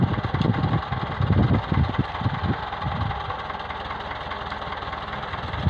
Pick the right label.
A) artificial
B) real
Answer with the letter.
B